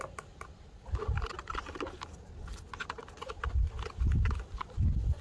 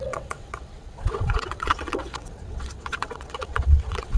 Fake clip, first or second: second